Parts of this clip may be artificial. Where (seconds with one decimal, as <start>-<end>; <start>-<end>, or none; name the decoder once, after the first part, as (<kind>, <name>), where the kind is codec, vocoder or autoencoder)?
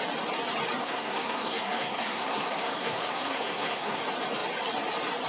0.8-4.0 (codec, SNAC)